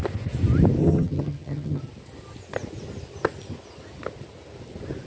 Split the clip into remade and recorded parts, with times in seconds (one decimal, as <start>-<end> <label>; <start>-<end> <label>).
0.0-0.8 recorded; 0.8-1.8 remade; 1.8-5.1 recorded